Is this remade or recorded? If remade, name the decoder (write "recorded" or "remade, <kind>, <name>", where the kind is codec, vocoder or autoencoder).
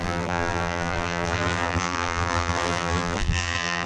remade, vocoder, BigVGAN v2